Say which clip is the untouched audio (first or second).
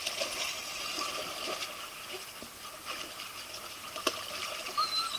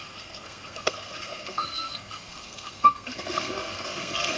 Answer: first